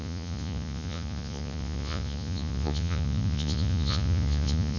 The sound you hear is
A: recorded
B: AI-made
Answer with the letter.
B